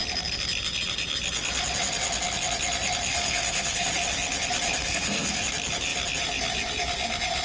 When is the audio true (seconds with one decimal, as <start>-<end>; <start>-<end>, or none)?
0.0-3.1; 3.9-4.8; 5.4-7.4